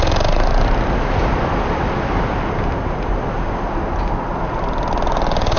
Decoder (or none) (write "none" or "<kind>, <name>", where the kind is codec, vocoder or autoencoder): none